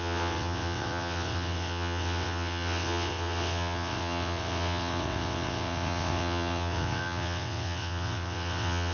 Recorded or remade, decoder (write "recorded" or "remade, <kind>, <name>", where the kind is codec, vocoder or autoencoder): remade, vocoder, WaveNeXt